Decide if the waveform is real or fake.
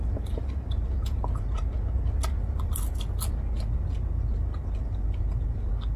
real